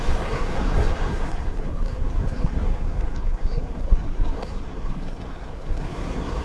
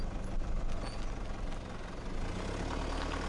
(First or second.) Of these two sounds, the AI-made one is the first